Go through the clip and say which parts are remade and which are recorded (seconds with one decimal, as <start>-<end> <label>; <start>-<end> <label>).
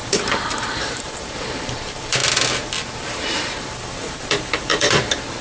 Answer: 0.0-2.2 remade; 2.2-3.0 recorded; 3.0-5.4 remade